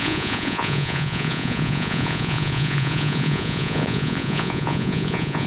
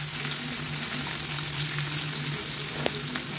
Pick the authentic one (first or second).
second